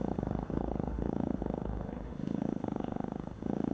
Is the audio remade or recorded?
remade